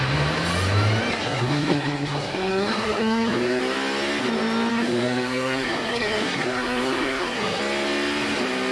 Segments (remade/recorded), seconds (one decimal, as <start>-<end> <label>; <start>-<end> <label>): 0.0-1.1 recorded; 1.1-3.6 remade; 3.6-4.7 recorded; 4.7-7.6 remade; 7.6-8.7 recorded